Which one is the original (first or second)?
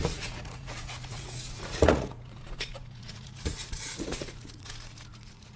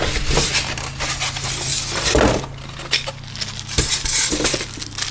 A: second